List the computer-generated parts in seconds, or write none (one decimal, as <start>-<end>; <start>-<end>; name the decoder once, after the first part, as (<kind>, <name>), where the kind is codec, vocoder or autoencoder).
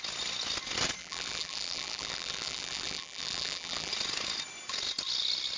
1.0-3.9 (vocoder, BigVGAN v2)